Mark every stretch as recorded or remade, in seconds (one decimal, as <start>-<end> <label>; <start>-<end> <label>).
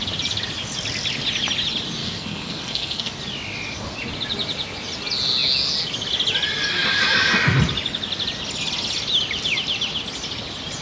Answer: 0.0-2.0 recorded; 2.0-3.1 remade; 3.1-10.8 recorded